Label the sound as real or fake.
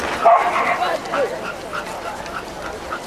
real